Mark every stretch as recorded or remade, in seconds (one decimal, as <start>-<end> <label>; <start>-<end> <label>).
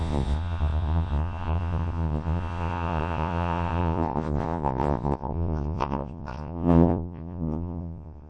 0.0-8.3 remade